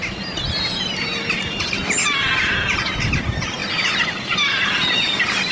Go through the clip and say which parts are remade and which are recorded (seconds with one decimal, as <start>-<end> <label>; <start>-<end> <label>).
0.0-5.5 recorded